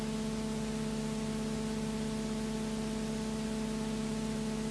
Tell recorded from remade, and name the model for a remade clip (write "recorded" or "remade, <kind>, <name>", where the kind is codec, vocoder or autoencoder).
recorded